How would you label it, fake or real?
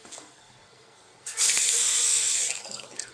fake